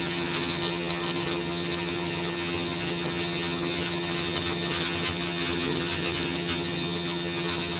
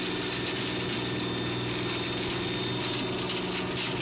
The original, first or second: second